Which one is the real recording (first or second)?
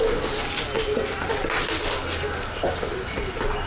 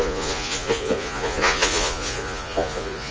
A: first